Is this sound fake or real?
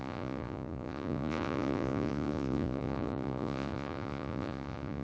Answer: fake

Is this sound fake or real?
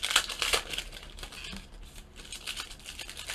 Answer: real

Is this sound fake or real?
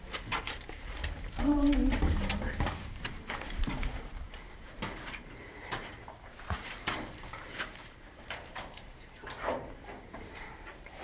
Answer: fake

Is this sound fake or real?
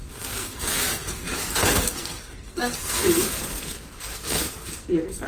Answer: fake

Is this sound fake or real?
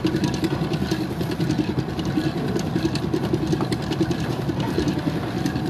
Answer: real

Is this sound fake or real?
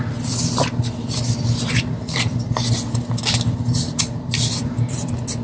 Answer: fake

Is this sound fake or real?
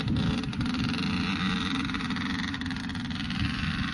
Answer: real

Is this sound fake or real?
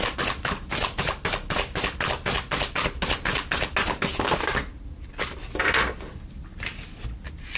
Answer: real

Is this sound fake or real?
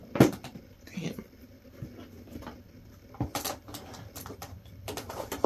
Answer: real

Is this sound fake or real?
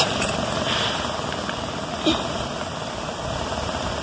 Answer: real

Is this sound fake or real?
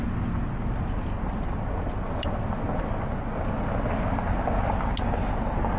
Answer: real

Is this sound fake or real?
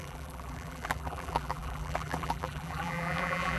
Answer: fake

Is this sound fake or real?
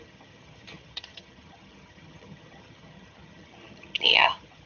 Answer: fake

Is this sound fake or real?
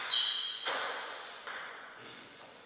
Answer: fake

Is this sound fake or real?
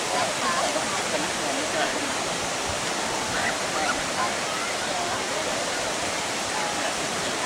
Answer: real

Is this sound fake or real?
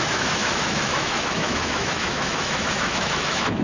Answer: fake